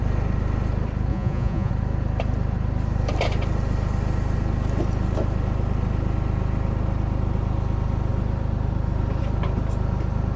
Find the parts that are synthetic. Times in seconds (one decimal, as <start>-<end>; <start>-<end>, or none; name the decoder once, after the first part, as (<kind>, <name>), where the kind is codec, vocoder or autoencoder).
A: 1.1-1.7 (vocoder, Vocos)